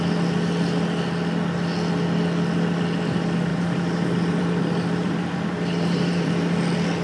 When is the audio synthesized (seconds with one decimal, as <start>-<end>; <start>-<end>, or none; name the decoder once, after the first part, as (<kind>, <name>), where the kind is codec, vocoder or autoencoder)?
3.5-6.3 (vocoder, BigVGAN v2)